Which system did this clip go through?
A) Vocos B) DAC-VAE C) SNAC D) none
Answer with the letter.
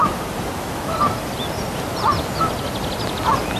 D